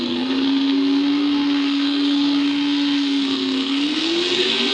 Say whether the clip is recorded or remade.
remade